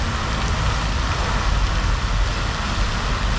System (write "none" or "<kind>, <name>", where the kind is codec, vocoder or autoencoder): none